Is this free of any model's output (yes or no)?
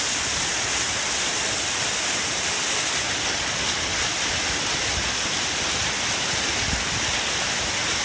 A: yes